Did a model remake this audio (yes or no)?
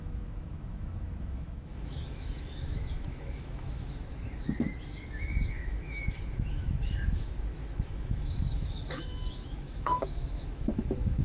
yes